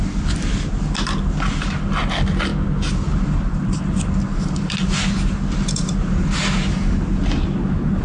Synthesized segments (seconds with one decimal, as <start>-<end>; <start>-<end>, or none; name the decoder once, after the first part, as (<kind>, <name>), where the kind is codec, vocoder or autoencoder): none